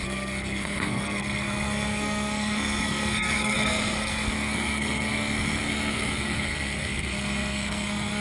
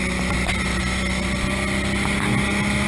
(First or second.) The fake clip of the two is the first